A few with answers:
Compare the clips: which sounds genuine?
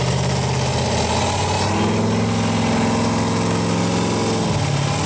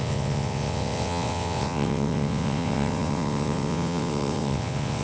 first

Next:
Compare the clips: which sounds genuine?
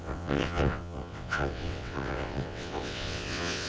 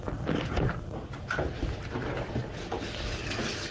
second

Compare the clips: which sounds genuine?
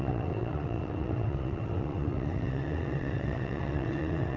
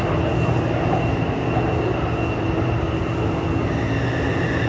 second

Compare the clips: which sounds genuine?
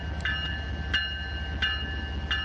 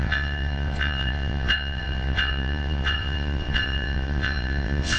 first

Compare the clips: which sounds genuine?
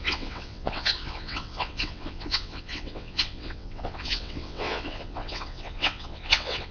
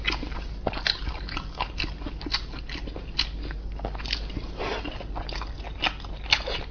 second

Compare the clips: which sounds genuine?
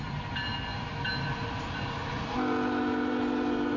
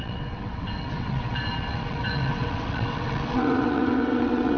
first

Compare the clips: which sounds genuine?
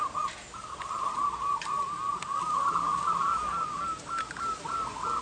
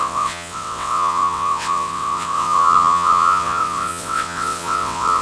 first